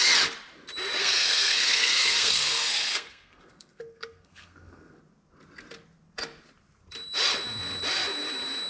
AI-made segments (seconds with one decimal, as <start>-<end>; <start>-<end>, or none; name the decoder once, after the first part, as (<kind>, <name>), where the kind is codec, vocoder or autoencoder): 1.0-5.0 (codec, SNAC)